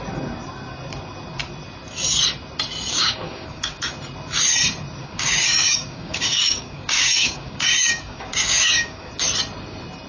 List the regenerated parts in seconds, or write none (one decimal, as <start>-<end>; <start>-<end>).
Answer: 2.9-3.9; 5.0-9.1